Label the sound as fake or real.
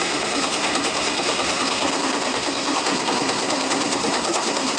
fake